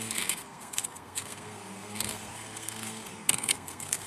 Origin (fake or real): fake